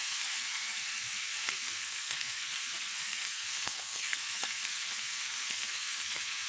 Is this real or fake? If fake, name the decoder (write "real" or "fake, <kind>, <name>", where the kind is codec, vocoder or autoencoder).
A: fake, codec, SNAC